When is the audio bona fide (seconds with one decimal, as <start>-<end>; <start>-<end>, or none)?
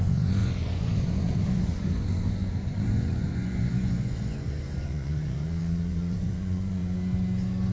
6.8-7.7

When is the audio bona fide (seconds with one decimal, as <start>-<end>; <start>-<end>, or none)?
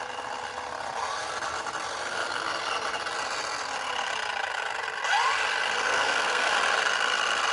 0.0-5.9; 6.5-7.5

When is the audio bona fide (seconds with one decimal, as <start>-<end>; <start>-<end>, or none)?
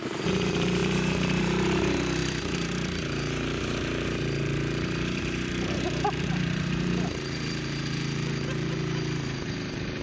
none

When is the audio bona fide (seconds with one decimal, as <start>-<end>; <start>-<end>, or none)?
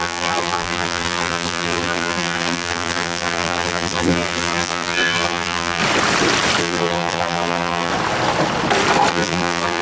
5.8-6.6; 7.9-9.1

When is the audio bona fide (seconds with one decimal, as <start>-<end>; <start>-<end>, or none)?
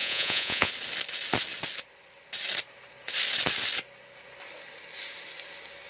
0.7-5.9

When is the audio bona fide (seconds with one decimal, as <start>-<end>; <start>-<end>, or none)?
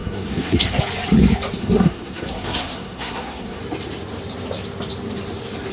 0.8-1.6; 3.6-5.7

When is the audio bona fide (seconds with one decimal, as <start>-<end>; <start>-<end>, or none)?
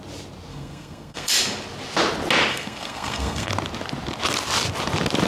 0.0-0.5; 1.3-2.5; 3.5-5.3